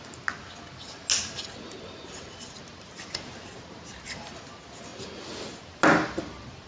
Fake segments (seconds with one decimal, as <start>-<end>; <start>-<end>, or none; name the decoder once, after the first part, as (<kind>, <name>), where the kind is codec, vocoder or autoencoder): none

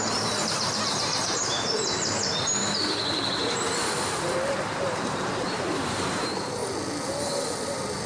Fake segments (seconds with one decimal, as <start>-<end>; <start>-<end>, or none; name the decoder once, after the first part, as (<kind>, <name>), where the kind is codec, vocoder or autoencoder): 0.0-2.6 (vocoder, BigVGAN v2); 5.0-6.6

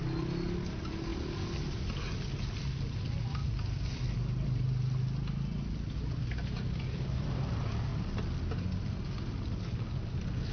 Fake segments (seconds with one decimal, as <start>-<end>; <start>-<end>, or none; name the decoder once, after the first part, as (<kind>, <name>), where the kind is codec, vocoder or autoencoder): none

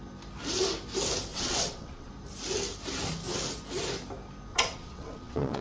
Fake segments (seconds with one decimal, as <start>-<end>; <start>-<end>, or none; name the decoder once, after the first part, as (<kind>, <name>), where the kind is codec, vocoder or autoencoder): 1.3-2.1 (vocoder, WaveNeXt); 4.5-5.6

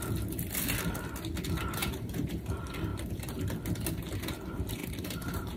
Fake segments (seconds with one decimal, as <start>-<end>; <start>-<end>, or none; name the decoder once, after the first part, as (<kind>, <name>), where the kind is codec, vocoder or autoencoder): 1.8-2.5 (vocoder, BigVGAN v2); 2.9-3.4; 4.8-5.6

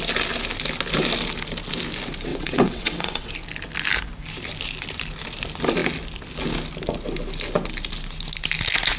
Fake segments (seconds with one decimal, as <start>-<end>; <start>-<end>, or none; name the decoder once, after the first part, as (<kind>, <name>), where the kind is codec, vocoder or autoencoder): 2.3-3.3 (vocoder, WaveNeXt)

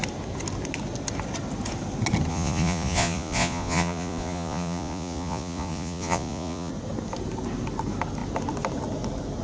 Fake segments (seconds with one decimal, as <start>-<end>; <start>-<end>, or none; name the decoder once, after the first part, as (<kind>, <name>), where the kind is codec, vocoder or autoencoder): 2.3-6.7 (vocoder, Vocos)

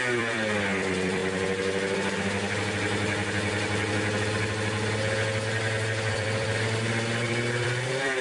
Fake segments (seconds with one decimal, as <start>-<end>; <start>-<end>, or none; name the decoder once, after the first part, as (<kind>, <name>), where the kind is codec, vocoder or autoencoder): 0.0-1.2 (vocoder, BigVGAN v2); 6.1-8.2